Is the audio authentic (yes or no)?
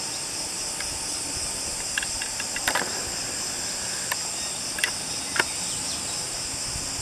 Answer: yes